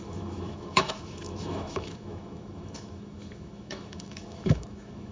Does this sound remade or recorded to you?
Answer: remade